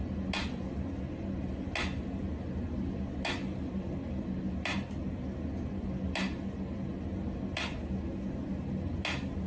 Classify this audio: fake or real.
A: real